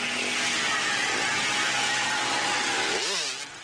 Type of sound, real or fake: real